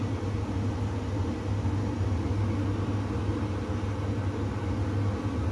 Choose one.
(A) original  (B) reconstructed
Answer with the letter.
A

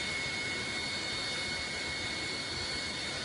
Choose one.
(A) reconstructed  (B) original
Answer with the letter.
B